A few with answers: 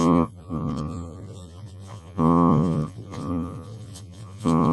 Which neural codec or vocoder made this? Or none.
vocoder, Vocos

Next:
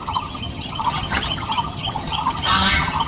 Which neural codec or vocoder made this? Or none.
vocoder, HiFi-GAN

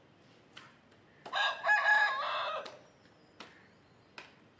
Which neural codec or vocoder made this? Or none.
none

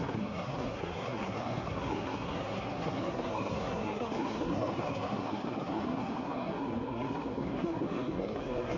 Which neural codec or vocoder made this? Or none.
codec, SNAC